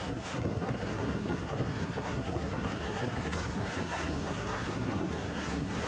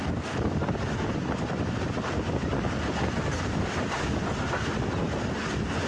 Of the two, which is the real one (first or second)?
second